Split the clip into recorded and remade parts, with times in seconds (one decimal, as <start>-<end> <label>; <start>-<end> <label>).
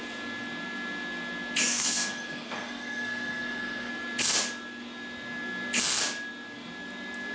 0.0-1.7 recorded; 1.7-3.9 remade; 3.9-7.3 recorded